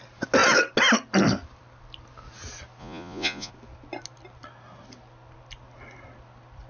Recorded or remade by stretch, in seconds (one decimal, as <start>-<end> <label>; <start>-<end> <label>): 0.0-2.8 recorded; 2.8-3.5 remade; 3.5-6.7 recorded